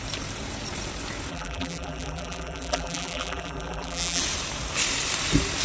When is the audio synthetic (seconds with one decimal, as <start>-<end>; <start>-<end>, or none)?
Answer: 1.3-4.2